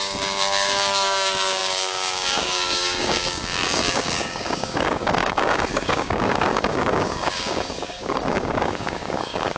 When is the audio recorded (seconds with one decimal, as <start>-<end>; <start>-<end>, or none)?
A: none

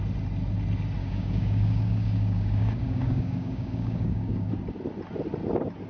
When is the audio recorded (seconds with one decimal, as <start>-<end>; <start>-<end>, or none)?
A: 0.0-1.0; 4.5-5.9

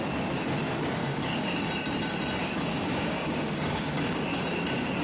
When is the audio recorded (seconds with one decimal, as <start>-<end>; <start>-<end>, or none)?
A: 0.0-1.0; 1.7-2.4; 4.4-5.0

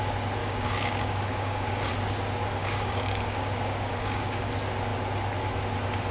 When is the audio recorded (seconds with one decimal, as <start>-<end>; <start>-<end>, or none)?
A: 0.0-0.4; 1.9-2.6; 4.5-6.1

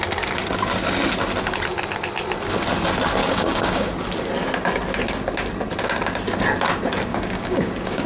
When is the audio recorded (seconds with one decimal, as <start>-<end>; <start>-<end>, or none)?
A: 0.0-3.2; 3.9-7.1